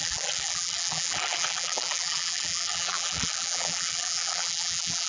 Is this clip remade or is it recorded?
remade